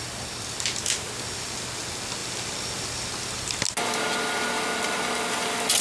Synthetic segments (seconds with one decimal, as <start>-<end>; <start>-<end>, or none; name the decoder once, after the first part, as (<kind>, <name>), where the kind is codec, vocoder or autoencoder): none

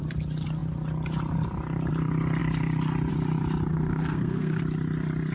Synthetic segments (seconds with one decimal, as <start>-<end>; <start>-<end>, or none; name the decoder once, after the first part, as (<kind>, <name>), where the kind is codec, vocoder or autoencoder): 3.7-4.6 (codec, SNAC)

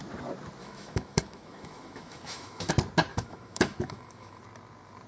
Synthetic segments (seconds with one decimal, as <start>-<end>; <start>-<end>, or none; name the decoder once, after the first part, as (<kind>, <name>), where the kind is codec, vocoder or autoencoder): 0.6-2.7 (autoencoder, DAC-VAE); 3.1-4.4